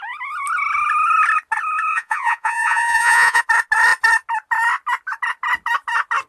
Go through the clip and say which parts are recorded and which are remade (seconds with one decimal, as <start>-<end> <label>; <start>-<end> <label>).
0.0-1.9 recorded; 1.9-3.4 remade; 3.4-6.3 recorded